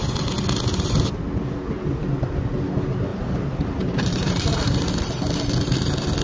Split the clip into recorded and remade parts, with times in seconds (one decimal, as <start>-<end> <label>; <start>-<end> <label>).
0.0-3.1 recorded; 3.1-4.9 remade; 4.9-6.2 recorded